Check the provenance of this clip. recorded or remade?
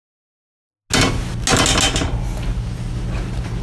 recorded